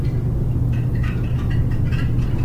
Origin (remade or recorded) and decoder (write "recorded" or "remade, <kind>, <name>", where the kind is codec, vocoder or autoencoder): recorded